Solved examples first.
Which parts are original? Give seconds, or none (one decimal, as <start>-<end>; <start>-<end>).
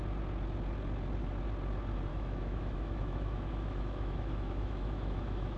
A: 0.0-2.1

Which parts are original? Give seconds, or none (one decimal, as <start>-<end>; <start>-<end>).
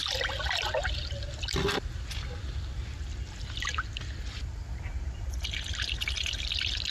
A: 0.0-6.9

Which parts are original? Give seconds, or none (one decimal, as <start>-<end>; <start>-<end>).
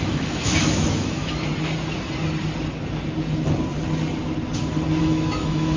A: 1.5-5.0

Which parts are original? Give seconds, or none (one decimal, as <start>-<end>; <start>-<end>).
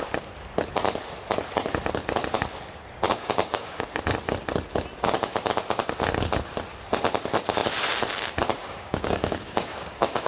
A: 0.0-3.1; 4.0-8.6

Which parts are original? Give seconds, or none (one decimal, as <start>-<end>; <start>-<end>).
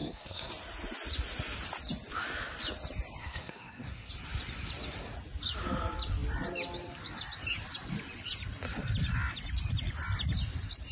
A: 0.5-3.2; 4.1-10.9